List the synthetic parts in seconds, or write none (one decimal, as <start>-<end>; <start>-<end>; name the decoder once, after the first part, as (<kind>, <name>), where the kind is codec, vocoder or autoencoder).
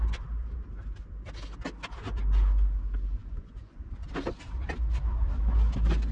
3.2-3.9 (vocoder, Vocos)